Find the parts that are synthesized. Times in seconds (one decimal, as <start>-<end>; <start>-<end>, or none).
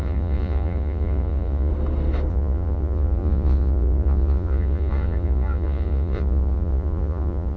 0.0-1.7; 2.3-7.6